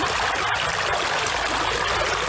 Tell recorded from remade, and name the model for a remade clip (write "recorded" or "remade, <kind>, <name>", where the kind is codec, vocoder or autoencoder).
recorded